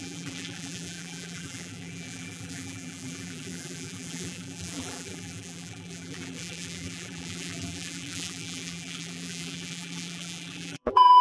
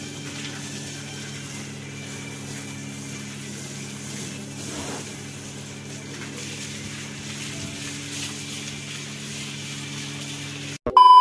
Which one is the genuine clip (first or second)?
second